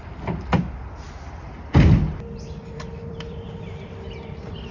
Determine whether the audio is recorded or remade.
remade